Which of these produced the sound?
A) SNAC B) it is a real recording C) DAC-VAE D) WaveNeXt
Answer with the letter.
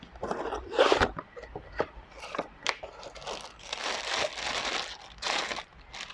B